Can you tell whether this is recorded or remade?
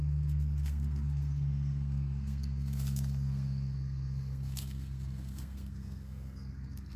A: remade